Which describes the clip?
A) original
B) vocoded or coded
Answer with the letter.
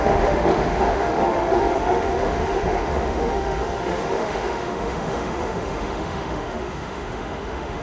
B